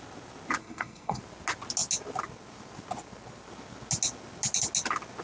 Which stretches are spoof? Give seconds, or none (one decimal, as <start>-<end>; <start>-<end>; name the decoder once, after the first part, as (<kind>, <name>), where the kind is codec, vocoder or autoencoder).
0.6-1.2 (codec, SNAC)